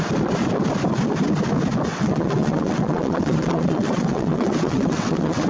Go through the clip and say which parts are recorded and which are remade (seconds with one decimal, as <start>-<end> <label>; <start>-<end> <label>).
0.0-1.9 recorded; 1.9-5.5 remade